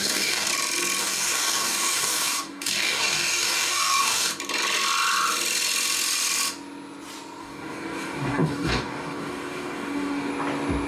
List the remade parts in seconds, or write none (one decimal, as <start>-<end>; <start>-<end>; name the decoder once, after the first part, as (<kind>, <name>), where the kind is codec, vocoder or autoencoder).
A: 0.0-0.5 (codec, DAC); 1.0-4.3; 7.4-10.3